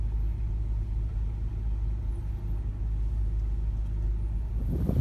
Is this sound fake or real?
real